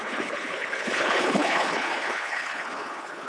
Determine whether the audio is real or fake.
fake